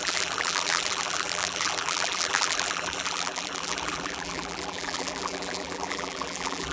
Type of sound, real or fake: fake